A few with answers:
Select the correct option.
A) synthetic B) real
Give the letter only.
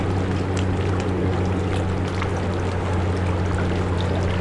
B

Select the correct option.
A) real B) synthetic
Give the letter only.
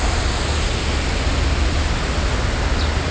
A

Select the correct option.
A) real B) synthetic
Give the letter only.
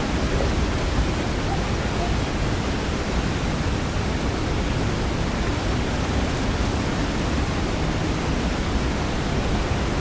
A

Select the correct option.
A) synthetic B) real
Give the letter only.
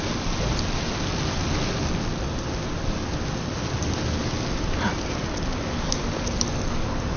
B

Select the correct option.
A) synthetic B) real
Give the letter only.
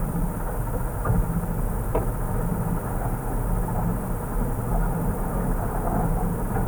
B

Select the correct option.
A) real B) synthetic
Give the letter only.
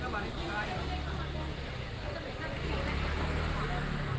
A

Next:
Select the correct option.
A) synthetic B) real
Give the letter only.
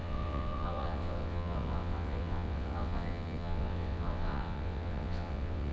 A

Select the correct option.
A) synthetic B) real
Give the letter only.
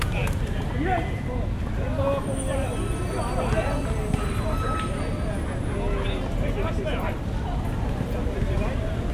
B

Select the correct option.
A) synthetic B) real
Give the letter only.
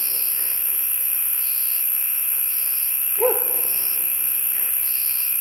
A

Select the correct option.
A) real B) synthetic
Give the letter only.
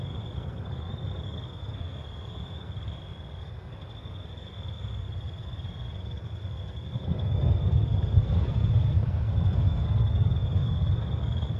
B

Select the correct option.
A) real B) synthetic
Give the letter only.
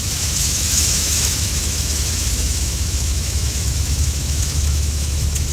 B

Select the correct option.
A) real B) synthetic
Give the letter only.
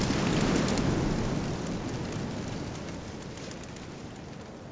A